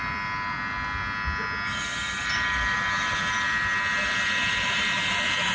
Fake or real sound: real